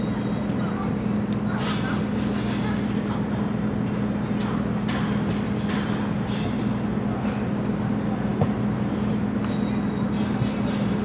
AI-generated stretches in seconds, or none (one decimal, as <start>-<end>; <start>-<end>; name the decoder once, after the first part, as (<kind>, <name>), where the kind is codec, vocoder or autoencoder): none